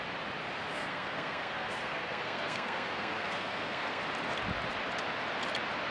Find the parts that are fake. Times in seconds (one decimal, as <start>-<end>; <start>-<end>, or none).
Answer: 0.7-4.0